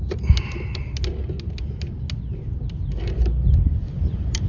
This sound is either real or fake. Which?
real